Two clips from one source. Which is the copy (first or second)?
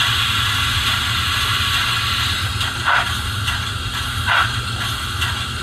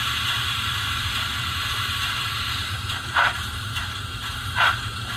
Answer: second